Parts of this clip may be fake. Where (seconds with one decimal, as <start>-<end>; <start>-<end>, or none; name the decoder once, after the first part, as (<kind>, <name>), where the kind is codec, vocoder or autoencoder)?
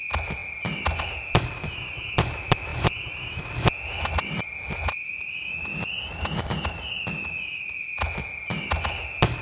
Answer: none